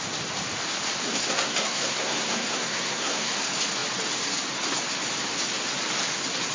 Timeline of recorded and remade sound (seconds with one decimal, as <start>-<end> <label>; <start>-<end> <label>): 0.0-1.1 recorded; 1.1-3.3 remade; 3.3-6.5 recorded

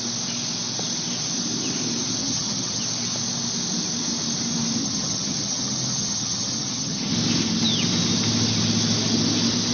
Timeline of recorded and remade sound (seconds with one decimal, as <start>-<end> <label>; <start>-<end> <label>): 0.0-2.2 recorded; 2.2-2.8 remade; 2.8-4.8 recorded; 4.8-7.1 remade; 7.1-9.7 recorded